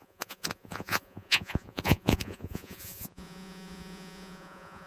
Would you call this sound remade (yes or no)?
yes